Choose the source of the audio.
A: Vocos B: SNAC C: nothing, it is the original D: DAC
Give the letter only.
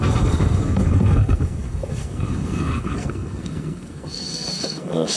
B